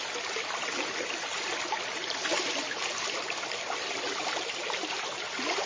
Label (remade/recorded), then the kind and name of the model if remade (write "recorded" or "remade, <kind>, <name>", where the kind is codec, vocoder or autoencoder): recorded